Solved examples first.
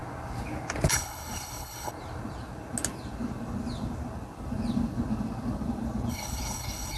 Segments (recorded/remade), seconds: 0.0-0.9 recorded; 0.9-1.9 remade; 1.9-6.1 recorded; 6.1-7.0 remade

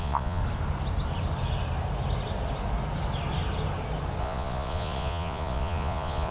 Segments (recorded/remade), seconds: 0.0-0.4 remade; 0.4-4.2 recorded; 4.2-6.3 remade

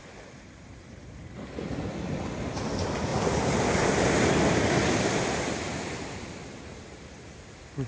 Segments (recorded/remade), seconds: 0.0-3.1 remade; 3.1-3.6 recorded; 3.6-7.9 remade

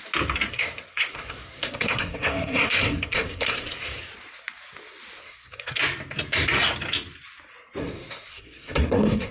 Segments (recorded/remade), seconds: 0.0-0.5 recorded; 0.5-4.0 remade; 4.0-5.2 recorded; 5.2-5.8 remade; 5.8-7.8 recorded; 7.8-9.3 remade